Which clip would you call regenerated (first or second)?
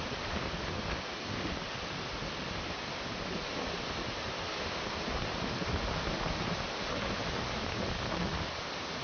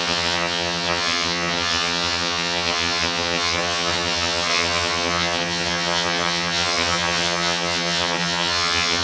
second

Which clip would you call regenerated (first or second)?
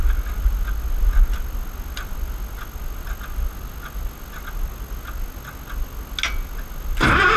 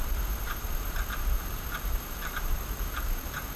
second